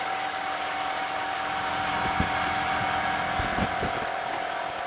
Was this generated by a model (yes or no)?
no